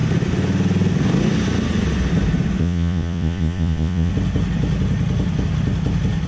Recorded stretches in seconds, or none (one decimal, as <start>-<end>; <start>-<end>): 0.0-2.6; 4.1-6.3